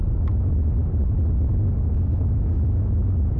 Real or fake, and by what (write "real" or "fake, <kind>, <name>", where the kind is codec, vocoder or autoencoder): real